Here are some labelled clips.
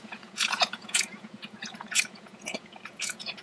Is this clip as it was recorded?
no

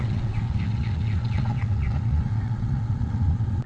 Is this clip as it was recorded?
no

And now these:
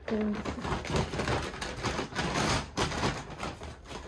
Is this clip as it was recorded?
yes